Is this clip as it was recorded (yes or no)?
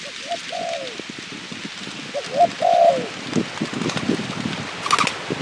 yes